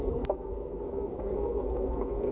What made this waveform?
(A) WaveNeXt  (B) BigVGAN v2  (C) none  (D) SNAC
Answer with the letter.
D